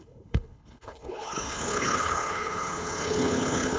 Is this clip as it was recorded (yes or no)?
no